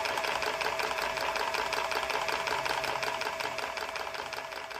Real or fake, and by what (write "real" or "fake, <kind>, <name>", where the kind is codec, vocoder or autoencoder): real